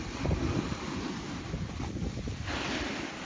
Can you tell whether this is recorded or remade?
recorded